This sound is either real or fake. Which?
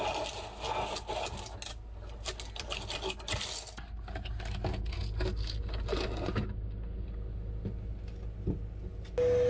real